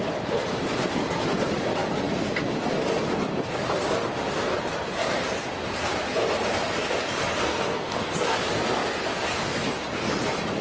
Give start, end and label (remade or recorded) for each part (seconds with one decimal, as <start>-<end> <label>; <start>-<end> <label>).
0.0-7.5 recorded; 7.5-8.1 remade; 8.1-10.6 recorded